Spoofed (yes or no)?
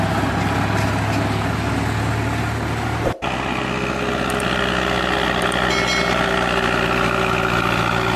no